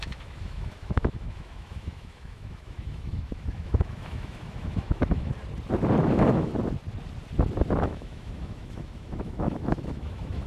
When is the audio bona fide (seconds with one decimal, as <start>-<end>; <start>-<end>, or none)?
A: 5.3-6.0; 6.5-7.8